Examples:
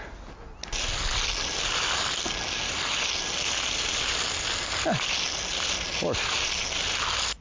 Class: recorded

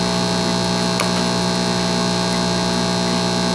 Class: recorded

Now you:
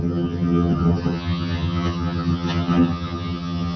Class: remade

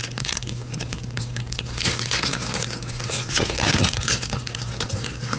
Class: remade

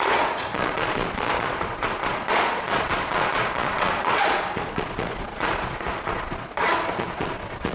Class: remade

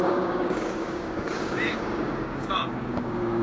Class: remade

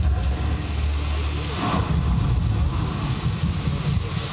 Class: recorded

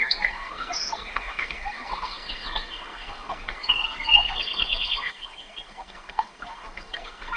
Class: remade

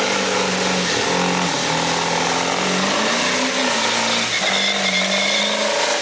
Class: recorded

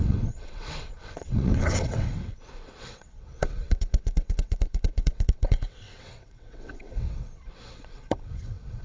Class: remade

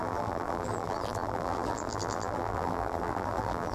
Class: remade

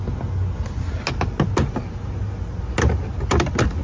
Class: recorded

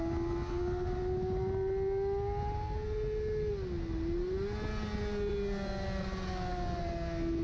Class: recorded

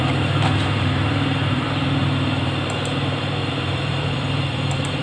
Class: remade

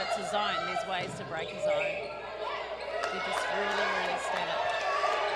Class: recorded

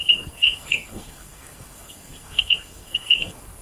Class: remade